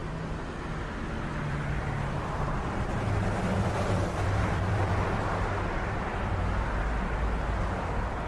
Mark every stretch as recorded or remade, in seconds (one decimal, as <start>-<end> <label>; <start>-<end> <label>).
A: 0.0-0.5 remade; 0.5-1.3 recorded; 1.3-6.3 remade; 6.3-8.3 recorded